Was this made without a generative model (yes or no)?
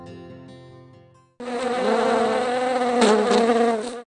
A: yes